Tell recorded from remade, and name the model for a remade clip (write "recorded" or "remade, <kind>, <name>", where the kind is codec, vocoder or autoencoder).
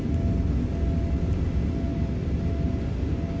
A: recorded